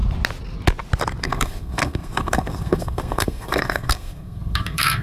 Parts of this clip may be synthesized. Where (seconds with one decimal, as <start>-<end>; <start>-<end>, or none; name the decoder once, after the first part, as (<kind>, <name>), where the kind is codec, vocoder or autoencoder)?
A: 1.2-5.0 (codec, SNAC)